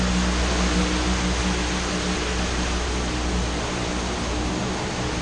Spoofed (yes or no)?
no